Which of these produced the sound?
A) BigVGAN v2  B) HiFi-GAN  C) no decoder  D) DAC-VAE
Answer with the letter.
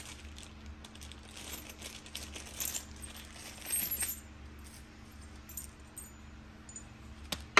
C